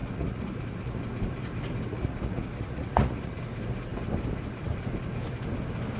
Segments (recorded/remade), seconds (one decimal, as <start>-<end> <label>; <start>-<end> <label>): 0.0-1.0 remade; 1.0-1.9 recorded; 1.9-3.4 remade; 3.4-6.0 recorded